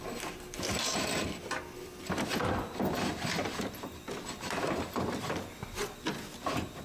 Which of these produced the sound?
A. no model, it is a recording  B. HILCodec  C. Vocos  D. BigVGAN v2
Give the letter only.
D